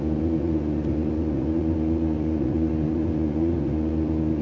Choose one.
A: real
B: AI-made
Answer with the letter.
B